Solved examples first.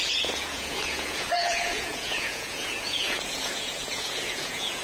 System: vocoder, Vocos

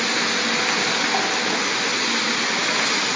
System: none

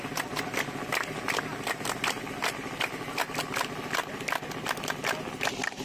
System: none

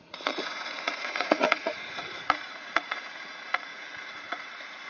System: vocoder, Vocos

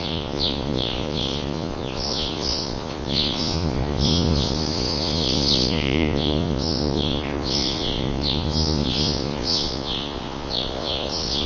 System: vocoder, Vocos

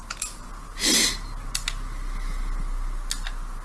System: none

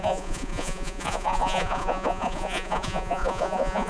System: vocoder, Vocos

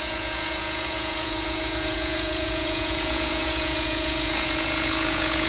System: vocoder, Vocos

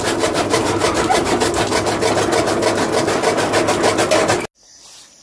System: none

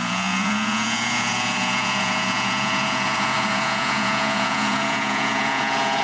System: vocoder, Vocos